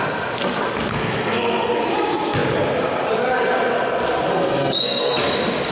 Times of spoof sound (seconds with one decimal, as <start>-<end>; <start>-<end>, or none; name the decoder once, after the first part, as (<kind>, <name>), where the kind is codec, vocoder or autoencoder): 0.9-1.7 (codec, SNAC); 4.3-5.2